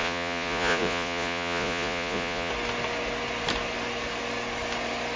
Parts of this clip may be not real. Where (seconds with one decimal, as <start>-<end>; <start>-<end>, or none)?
0.0-2.5